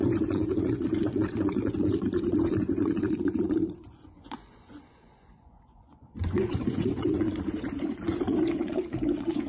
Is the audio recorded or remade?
remade